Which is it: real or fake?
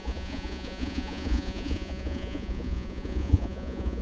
fake